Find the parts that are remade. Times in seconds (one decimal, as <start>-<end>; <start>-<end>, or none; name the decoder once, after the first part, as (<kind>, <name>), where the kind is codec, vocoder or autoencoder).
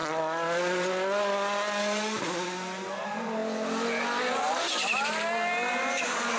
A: 3.0-3.4 (vocoder, BigVGAN v2); 4.2-6.4